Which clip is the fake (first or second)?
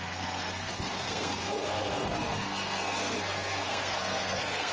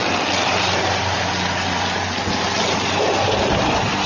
first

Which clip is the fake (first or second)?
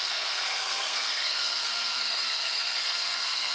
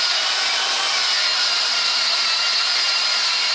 first